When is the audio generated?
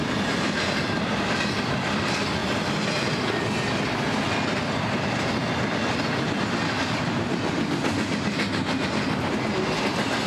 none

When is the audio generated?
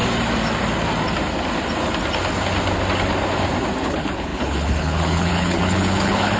3.8-6.4 (codec, HILCodec)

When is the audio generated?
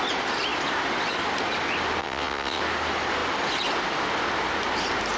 2.0-2.6 (vocoder, WaveNeXt)